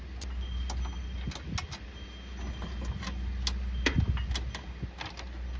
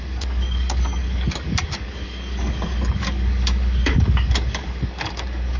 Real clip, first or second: first